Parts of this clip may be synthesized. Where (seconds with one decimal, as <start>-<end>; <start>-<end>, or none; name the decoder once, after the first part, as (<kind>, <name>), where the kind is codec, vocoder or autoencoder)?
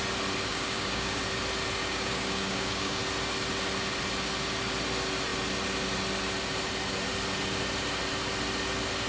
0.5-1.2 (codec, DAC); 1.8-3.0